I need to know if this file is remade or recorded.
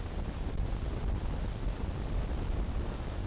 recorded